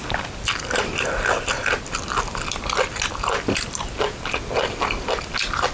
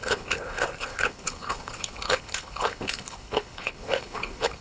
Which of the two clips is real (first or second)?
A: first